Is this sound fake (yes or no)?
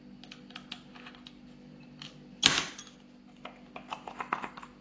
no